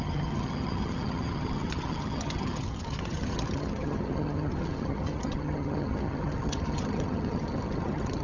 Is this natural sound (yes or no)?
no